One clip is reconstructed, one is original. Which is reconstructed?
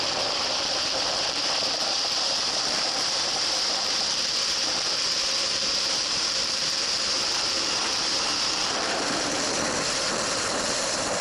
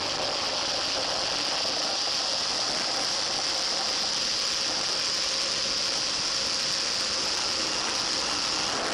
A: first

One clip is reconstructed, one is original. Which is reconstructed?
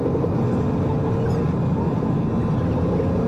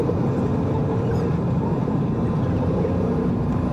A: second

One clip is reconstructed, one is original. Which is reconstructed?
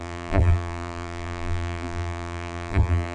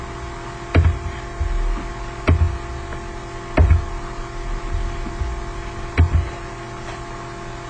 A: first